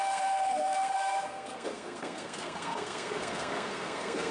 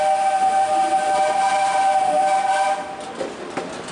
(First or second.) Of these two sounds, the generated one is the first